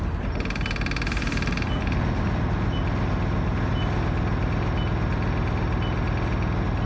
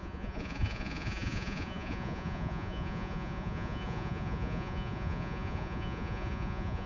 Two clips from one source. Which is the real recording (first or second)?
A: first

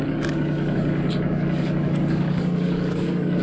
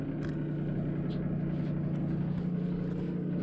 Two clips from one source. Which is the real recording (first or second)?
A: second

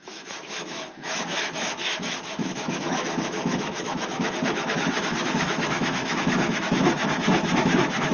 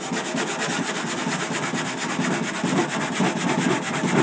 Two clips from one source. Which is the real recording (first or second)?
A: second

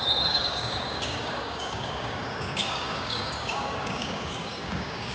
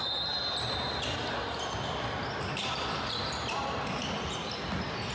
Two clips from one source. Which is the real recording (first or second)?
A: second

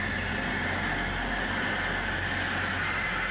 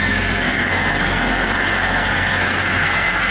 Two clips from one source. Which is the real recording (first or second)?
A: first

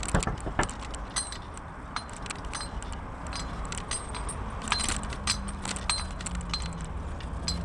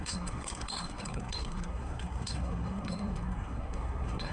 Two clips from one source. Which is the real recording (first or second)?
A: first